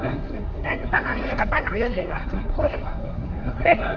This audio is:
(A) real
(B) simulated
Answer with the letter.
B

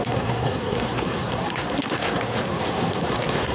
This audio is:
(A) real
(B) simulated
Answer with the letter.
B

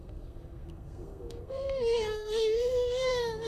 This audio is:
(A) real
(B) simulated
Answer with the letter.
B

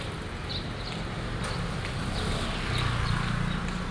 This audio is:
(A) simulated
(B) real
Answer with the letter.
B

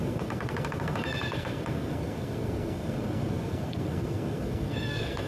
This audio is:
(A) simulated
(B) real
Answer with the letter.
A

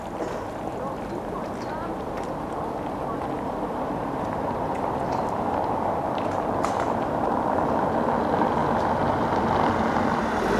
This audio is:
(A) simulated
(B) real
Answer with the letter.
B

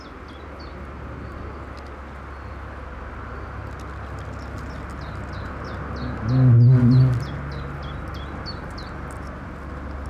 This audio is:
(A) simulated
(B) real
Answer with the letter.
B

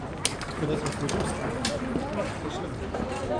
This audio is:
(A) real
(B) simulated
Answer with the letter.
A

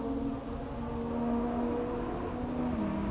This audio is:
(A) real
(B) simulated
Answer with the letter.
A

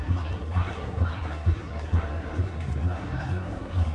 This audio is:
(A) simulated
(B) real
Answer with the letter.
A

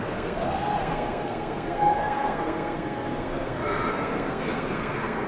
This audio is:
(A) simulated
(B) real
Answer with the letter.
A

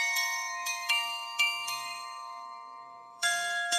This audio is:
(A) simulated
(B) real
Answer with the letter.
A